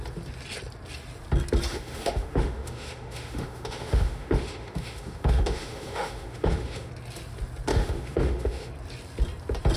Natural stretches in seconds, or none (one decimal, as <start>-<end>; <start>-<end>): 0.0-1.7; 6.9-7.7; 8.7-9.8